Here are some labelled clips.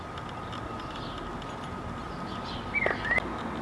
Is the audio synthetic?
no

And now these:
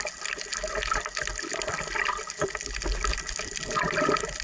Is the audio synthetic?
no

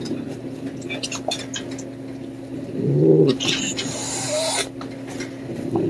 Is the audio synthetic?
no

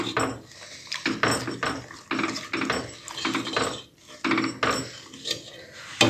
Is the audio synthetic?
no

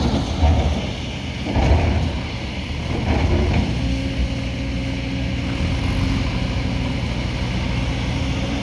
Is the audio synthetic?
no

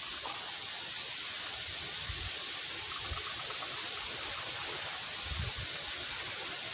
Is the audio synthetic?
no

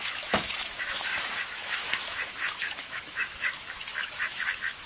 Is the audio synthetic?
yes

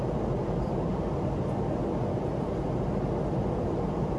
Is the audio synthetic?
no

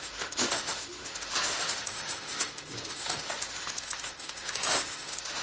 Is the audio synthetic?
yes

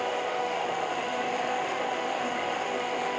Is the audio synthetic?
yes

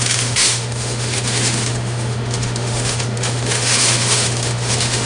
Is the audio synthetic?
yes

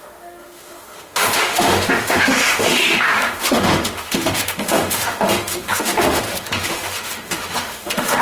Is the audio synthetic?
yes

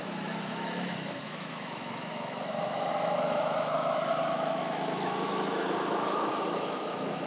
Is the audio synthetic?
yes